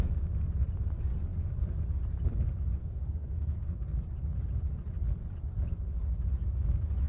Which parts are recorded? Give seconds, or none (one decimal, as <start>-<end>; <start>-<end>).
0.0-2.8; 3.8-7.1